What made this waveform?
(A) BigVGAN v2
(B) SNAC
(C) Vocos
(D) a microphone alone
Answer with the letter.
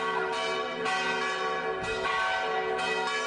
D